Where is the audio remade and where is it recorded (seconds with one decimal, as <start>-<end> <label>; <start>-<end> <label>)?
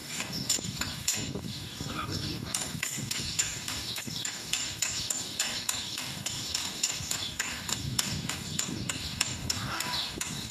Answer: 0.0-10.5 remade